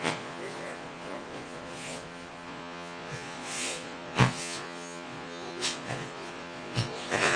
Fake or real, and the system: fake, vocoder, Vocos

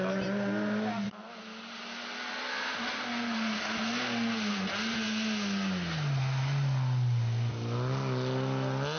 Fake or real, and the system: real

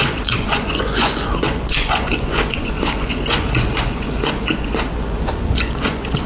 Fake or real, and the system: fake, vocoder, Vocos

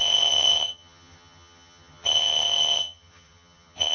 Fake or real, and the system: fake, vocoder, HiFi-GAN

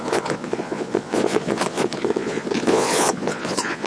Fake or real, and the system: fake, vocoder, Vocos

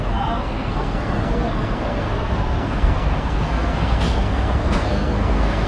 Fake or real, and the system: fake, codec, SNAC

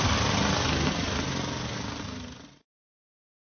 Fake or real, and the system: real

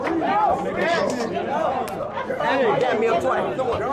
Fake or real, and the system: real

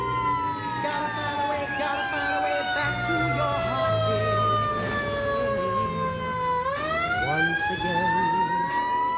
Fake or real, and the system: real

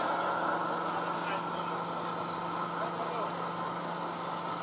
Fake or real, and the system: real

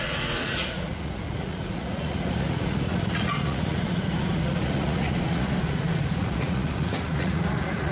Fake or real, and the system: fake, vocoder, Vocos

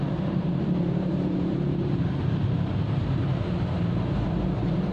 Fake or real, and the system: fake, vocoder, BigVGAN v2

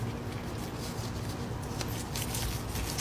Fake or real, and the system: real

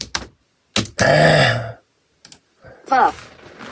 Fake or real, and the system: real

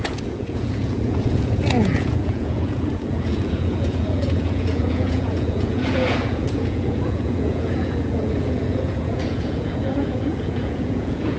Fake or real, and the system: fake, vocoder, Vocos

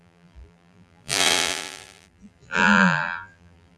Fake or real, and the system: fake, vocoder, BigVGAN v2